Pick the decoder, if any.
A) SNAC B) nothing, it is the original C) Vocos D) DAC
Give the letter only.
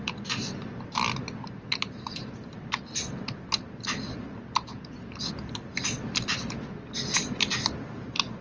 B